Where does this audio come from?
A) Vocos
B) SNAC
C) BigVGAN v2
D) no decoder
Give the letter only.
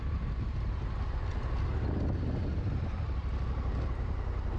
D